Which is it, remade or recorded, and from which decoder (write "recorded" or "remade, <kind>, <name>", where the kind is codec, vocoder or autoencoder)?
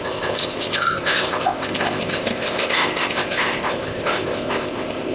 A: remade, codec, ZipCodec